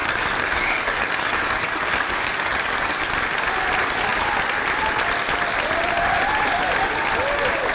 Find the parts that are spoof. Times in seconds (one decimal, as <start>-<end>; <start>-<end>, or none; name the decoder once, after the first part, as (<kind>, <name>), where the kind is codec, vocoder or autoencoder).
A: 0.0-3.1 (codec, DAC)